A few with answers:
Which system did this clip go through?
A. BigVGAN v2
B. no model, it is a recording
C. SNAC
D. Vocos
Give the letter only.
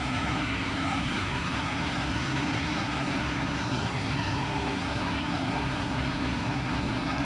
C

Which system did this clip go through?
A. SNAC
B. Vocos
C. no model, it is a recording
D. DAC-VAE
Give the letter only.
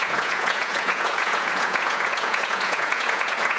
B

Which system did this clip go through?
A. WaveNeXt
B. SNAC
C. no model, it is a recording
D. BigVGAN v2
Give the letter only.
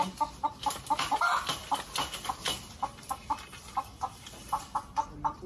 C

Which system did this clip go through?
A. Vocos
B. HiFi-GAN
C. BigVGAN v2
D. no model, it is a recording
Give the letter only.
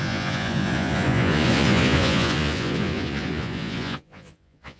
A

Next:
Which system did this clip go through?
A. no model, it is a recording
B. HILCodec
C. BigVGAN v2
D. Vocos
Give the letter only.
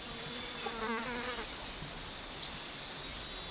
A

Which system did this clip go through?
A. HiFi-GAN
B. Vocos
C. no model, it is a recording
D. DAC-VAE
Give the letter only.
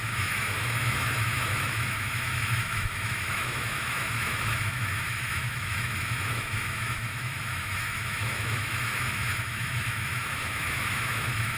D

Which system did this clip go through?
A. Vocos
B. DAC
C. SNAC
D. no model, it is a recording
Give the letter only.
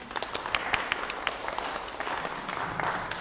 D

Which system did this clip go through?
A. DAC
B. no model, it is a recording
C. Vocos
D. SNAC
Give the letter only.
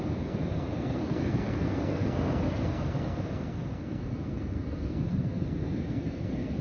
D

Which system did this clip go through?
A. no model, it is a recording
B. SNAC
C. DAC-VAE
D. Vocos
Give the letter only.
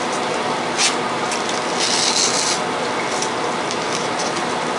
A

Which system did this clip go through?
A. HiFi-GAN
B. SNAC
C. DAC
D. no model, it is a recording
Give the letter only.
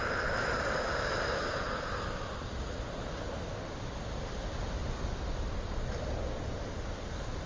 D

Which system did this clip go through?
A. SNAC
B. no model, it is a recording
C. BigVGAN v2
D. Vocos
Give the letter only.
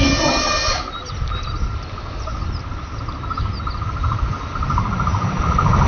B